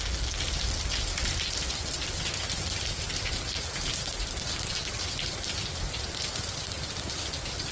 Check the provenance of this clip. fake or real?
real